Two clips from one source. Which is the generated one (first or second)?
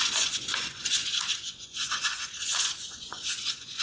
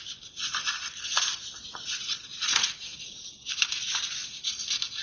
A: first